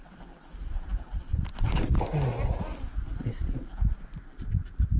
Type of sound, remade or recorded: recorded